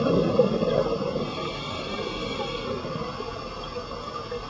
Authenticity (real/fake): real